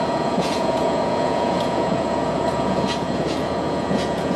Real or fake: fake